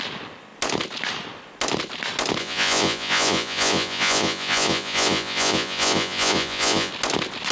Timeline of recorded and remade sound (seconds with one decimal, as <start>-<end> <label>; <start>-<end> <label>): 0.0-2.4 recorded; 2.4-6.9 remade; 6.9-7.5 recorded